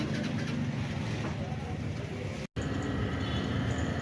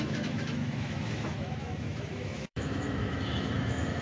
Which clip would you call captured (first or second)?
first